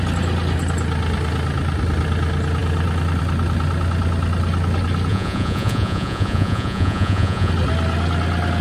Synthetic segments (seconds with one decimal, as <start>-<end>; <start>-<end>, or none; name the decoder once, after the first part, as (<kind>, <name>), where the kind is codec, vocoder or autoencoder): 5.1-7.5 (vocoder, Vocos)